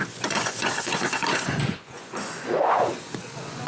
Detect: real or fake fake